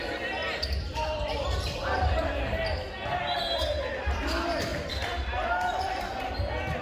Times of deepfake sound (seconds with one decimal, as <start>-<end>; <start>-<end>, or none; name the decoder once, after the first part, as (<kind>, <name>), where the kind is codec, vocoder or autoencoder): 4.7-6.2 (vocoder, BigVGAN v2)